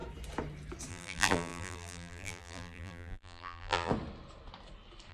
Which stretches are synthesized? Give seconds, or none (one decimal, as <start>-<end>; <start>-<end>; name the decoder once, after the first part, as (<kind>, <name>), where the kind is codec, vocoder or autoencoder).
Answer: 0.9-3.9 (vocoder, BigVGAN v2)